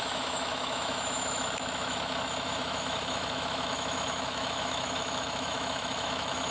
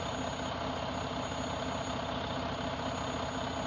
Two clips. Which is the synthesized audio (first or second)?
first